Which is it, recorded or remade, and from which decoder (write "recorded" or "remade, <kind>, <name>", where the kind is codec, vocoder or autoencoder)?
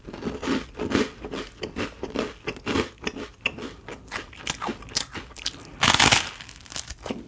recorded